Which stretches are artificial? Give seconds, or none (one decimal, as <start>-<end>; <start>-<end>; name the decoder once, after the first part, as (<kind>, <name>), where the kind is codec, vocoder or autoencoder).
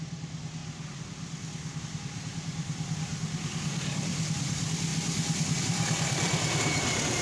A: 0.0-0.6 (vocoder, BigVGAN v2); 1.8-4.9; 5.6-7.2